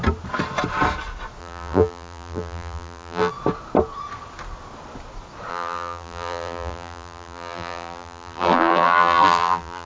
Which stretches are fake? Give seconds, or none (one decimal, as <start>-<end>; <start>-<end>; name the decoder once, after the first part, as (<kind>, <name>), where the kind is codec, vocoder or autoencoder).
1.4-3.3 (vocoder, BigVGAN v2); 5.5-9.9